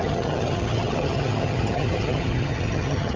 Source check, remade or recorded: remade